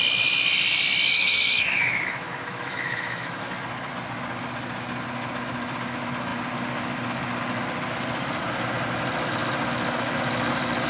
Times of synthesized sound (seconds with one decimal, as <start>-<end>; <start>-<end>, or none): 1.1-3.4